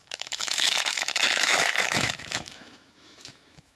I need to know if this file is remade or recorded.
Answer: remade